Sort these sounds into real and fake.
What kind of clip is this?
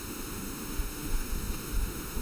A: fake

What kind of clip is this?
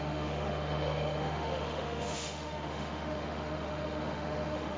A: fake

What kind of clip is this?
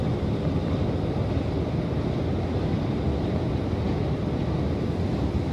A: real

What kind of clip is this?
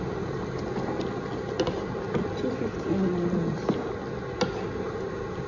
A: real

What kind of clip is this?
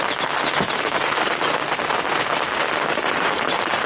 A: real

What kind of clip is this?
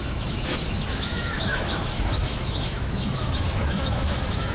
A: fake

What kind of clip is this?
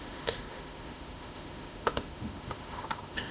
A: fake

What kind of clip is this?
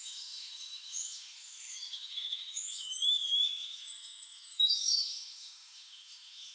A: fake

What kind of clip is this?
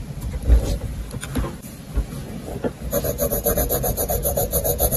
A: real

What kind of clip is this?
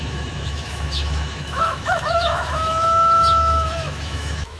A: fake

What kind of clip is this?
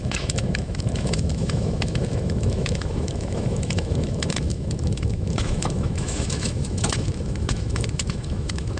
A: fake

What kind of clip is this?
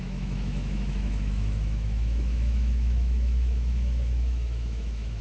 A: fake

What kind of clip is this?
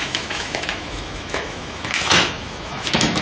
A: fake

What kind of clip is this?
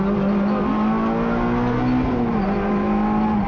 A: real